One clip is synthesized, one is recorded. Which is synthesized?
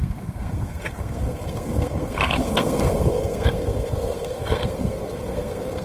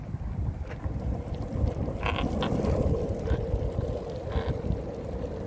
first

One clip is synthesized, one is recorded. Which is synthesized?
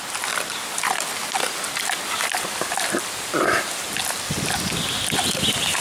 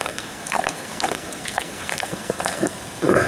second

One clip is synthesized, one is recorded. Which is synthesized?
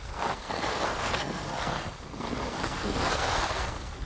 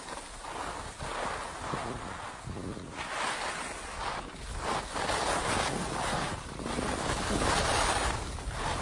first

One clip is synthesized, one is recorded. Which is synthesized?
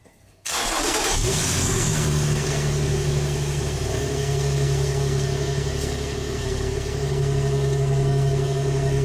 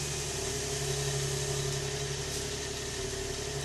first